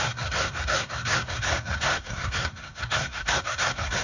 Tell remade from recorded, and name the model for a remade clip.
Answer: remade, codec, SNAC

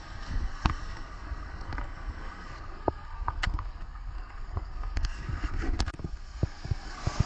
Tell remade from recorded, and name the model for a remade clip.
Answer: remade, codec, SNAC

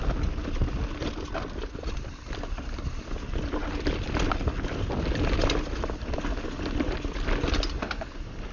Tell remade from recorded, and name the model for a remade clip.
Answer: recorded